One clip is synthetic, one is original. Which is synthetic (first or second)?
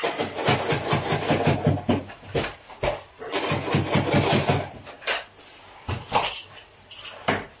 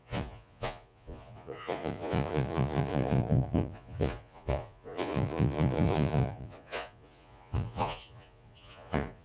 second